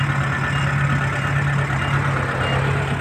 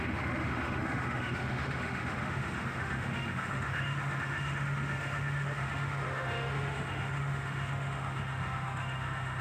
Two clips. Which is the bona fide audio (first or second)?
first